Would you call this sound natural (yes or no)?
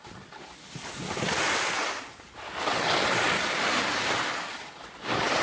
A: yes